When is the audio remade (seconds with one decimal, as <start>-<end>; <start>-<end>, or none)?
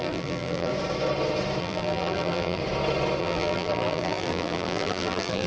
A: 0.0-0.7; 1.6-2.6; 3.2-5.5